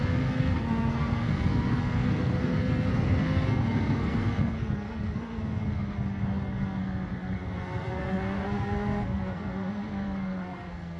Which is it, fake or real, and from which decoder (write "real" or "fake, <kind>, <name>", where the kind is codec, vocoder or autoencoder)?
fake, codec, SNAC